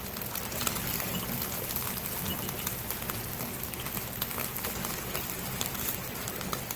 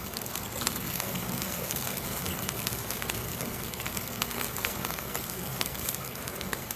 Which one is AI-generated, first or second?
second